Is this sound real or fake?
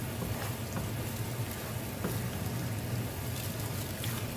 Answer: real